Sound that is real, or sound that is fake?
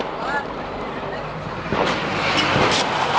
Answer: fake